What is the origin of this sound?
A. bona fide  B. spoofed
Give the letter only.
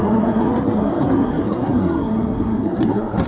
B